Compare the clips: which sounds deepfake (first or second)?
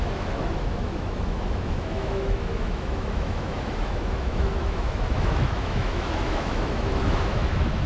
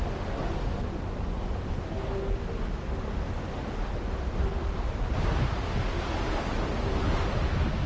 first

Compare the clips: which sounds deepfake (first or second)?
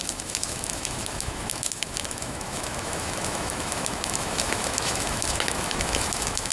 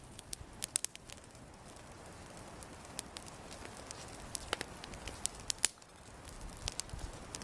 first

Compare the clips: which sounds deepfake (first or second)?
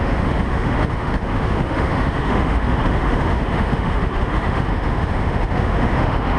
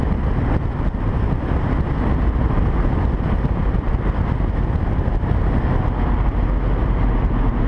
first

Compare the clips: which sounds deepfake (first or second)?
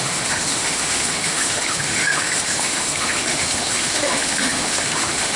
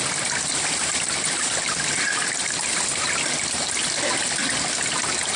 first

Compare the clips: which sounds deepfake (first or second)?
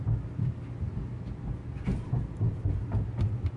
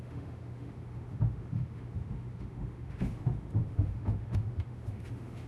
second